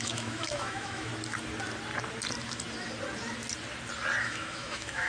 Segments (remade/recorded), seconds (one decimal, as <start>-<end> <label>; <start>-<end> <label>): 0.0-1.1 remade; 1.1-4.2 recorded; 4.2-5.1 remade